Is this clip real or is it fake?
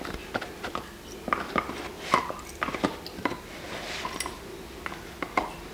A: real